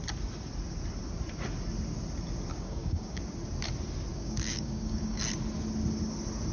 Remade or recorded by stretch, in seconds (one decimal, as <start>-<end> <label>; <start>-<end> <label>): 0.0-2.5 recorded; 2.5-3.2 remade; 3.2-4.1 recorded; 4.1-5.2 remade; 5.2-6.5 recorded

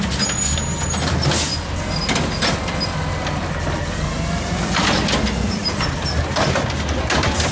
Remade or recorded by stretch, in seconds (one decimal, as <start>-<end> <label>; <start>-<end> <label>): 0.0-7.5 recorded

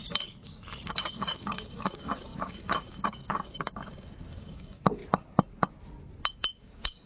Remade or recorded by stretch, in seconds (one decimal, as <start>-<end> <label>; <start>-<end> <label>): 0.0-5.0 remade; 5.0-6.3 recorded; 6.3-7.1 remade

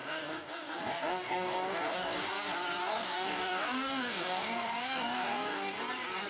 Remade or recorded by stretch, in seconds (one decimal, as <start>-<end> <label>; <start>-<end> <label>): 0.0-2.3 remade; 2.3-2.8 recorded; 2.8-5.8 remade; 5.8-6.3 recorded

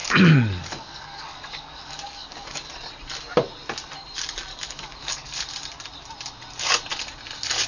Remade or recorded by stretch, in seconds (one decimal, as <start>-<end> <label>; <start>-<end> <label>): 0.0-2.7 remade; 2.7-4.5 recorded; 4.5-5.4 remade; 5.4-7.7 recorded

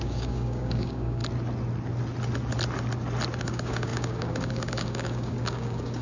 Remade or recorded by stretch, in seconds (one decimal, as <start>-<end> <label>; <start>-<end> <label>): 0.0-1.2 remade; 1.2-3.4 recorded; 3.4-6.0 remade

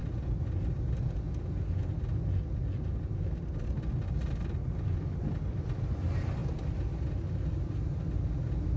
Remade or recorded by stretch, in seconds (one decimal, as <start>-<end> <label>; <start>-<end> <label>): 0.0-8.8 recorded

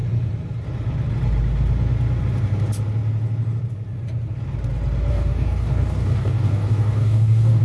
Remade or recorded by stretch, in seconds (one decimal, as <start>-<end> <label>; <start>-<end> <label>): 0.0-5.1 recorded; 5.1-7.6 remade